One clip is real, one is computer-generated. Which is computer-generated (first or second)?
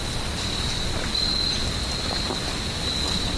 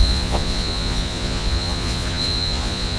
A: second